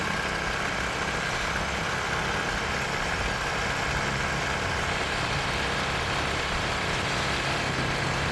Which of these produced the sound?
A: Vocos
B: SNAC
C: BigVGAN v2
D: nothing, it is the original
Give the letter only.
D